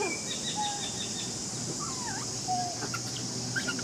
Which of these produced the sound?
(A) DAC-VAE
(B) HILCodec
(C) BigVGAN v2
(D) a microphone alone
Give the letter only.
D